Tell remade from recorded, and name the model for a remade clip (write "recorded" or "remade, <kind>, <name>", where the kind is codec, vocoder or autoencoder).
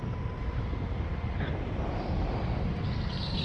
recorded